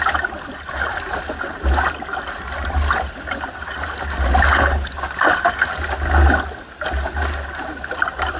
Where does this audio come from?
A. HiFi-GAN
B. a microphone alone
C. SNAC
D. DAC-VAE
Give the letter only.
B